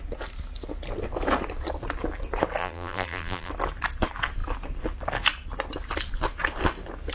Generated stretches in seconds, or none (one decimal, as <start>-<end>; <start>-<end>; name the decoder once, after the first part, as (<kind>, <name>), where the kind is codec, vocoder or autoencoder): 2.6-3.5 (vocoder, BigVGAN v2)